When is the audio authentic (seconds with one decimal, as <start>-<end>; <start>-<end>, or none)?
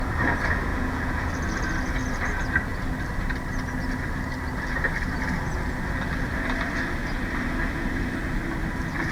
0.0-0.7; 1.3-9.1